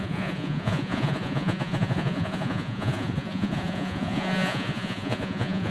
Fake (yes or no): yes